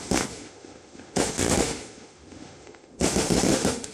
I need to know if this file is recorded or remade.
remade